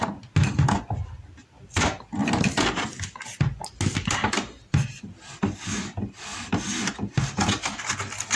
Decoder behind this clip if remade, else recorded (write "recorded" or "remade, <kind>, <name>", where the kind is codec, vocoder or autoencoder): recorded